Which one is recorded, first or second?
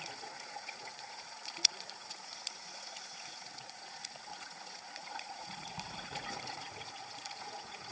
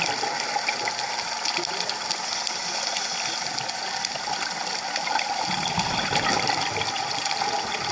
second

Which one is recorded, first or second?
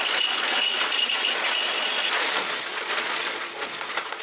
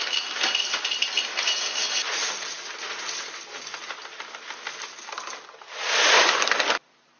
second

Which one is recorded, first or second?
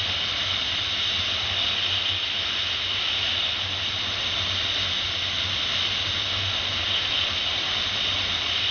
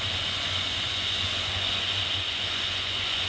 first